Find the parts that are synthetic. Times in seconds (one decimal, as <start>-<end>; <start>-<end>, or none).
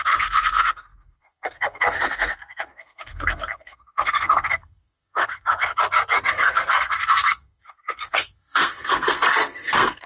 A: 0.0-5.7; 6.3-10.1